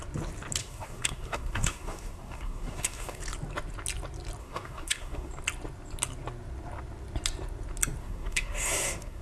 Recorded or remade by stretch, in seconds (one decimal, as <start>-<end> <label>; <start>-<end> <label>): 0.0-0.6 recorded; 0.6-3.2 remade; 3.2-4.4 recorded; 4.4-5.3 remade; 5.3-8.0 recorded; 8.0-9.2 remade